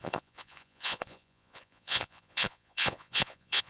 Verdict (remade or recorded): remade